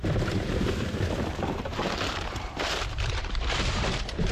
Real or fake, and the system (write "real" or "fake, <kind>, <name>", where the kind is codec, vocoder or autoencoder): fake, vocoder, BigVGAN v2